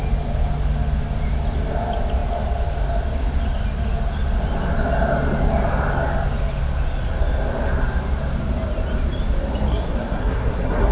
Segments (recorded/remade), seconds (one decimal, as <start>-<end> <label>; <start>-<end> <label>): 0.0-9.7 recorded; 9.7-10.9 remade

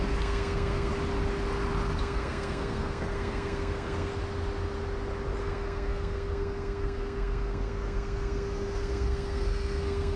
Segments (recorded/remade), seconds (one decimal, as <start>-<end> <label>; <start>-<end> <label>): 0.0-0.9 remade; 0.9-2.0 recorded; 2.0-4.1 remade; 4.1-5.4 recorded; 5.4-10.2 remade